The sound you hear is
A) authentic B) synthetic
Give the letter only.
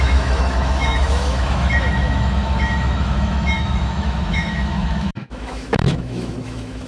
B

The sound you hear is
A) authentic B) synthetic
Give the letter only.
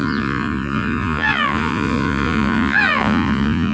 B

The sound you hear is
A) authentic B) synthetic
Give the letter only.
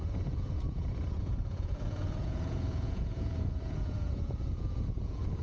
B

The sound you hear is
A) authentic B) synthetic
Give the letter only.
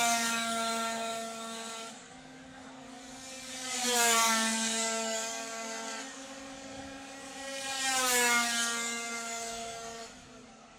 B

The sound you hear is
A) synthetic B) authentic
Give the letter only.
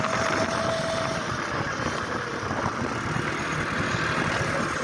B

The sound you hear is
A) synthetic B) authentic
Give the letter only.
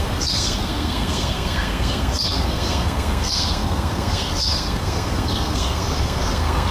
A